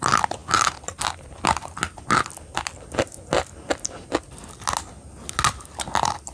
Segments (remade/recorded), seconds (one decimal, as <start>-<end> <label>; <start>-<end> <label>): 0.0-6.3 recorded